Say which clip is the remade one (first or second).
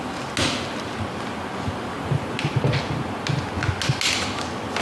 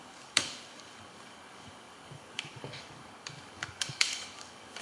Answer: second